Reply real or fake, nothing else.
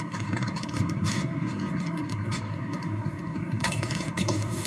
fake